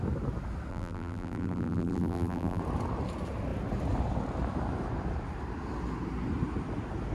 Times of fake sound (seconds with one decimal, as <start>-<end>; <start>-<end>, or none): 0.7-2.6

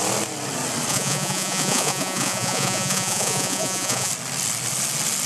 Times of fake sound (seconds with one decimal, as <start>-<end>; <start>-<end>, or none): 0.9-4.1

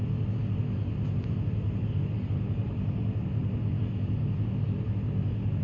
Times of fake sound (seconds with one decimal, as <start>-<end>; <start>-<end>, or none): 0.0-0.4; 2.5-5.6

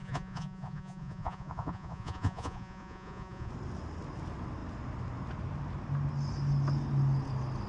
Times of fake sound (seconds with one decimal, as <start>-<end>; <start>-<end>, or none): 0.0-3.5